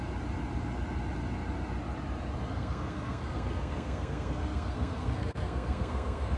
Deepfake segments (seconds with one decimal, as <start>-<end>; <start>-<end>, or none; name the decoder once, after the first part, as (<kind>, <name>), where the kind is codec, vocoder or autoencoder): 2.5-6.4 (codec, SNAC)

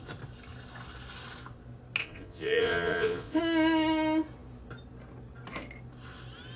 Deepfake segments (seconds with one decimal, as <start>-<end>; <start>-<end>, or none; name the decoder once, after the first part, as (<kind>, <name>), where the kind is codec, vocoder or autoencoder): 2.0-3.4 (vocoder, Vocos)